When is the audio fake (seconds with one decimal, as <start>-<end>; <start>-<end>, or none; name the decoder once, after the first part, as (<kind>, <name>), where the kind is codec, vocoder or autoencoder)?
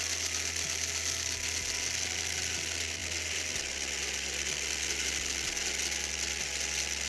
none